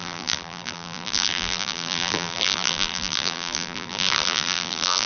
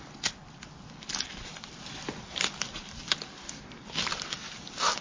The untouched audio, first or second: second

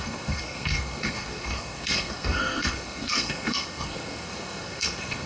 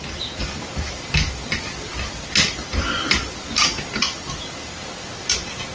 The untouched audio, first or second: second